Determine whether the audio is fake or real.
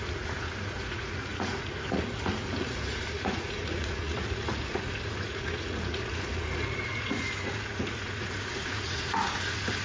fake